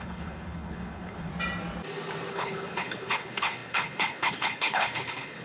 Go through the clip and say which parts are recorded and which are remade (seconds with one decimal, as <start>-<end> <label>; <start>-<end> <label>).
0.0-1.3 remade; 1.3-2.3 recorded; 2.3-5.4 remade

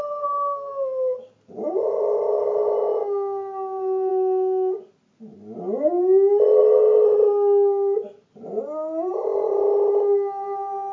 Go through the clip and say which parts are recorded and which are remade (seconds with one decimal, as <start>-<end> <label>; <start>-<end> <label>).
0.0-10.9 recorded

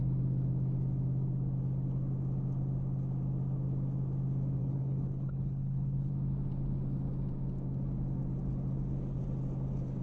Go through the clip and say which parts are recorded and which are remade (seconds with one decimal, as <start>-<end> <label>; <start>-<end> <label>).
0.0-4.6 recorded; 4.6-6.1 remade; 6.1-10.0 recorded

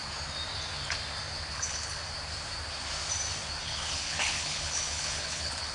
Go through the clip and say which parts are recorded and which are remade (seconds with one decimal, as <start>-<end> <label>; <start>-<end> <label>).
0.0-1.5 recorded; 1.5-2.0 remade; 2.0-3.6 recorded; 3.6-5.7 remade